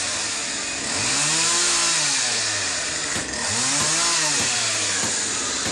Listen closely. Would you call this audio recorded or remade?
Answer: recorded